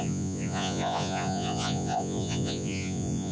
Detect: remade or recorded remade